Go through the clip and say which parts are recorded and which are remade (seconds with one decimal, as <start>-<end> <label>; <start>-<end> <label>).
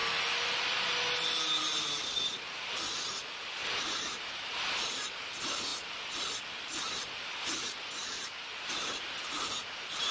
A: 0.0-3.6 recorded; 3.6-5.3 remade; 5.3-10.1 recorded